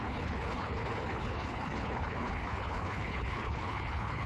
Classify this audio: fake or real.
fake